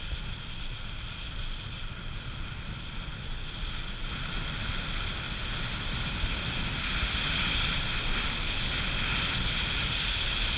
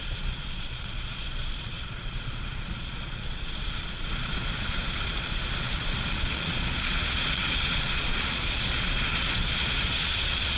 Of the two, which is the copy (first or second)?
second